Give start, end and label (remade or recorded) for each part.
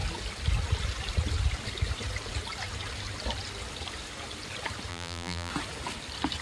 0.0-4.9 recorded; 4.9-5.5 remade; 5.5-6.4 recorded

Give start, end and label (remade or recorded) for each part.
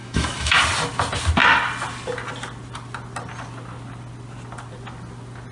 0.0-0.6 remade; 0.6-5.5 recorded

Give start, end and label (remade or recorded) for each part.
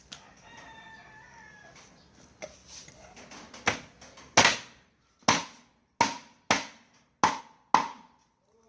0.0-8.7 recorded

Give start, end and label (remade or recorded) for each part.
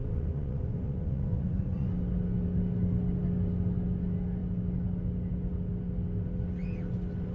0.0-1.9 remade; 1.9-7.3 recorded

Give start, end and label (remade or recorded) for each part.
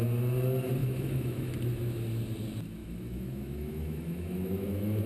0.0-0.8 recorded; 0.8-1.5 remade; 1.5-2.8 recorded; 2.8-5.1 remade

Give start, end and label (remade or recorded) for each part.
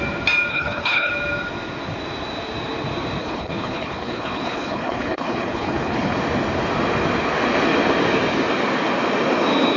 0.0-0.5 recorded; 0.5-1.1 remade; 1.1-3.2 recorded; 3.2-6.2 remade; 6.2-9.8 recorded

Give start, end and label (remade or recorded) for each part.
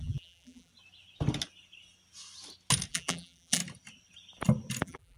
0.0-0.7 remade; 0.7-2.9 recorded; 2.9-3.6 remade; 3.6-4.8 recorded; 4.8-5.2 remade